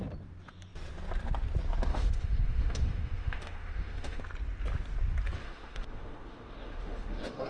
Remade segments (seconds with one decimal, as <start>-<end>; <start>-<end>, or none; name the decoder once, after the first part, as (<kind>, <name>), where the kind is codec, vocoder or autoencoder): 1.9-4.2 (autoencoder, DAC-VAE); 5.4-7.5